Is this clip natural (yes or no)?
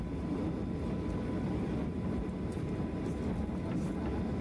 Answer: yes